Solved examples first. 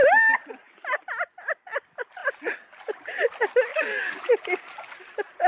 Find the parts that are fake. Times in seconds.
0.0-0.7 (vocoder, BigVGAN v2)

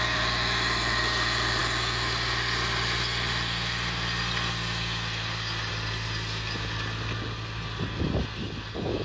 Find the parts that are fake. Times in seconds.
none

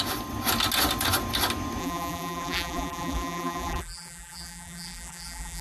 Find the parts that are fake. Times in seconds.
1.8-5.6 (vocoder, BigVGAN v2)

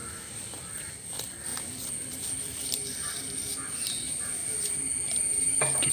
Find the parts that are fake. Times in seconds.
4.4-5.0 (vocoder, BigVGAN v2)

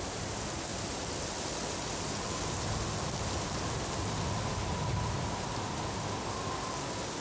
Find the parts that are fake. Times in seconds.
4.6-5.5 (vocoder, BigVGAN v2)

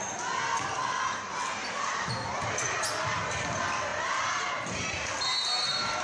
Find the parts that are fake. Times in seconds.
1.6-2.8 (vocoder, BigVGAN v2); 3.9-5.1

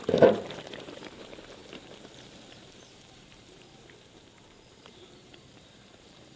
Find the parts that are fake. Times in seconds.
0.0-6.4 (vocoder, BigVGAN v2)